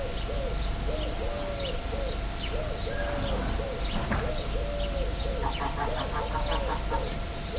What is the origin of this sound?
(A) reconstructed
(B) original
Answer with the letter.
B